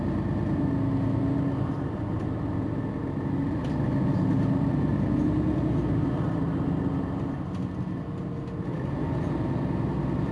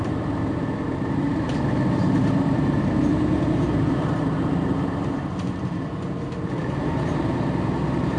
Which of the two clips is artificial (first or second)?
second